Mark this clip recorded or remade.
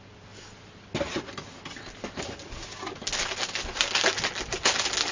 recorded